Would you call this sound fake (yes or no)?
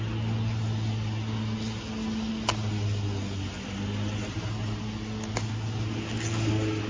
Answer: no